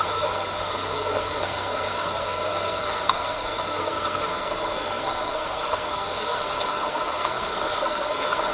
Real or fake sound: fake